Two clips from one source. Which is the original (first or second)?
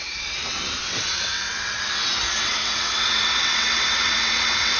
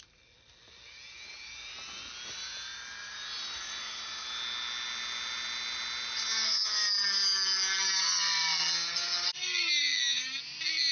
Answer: second